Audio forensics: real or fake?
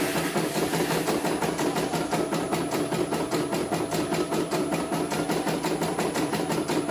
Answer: real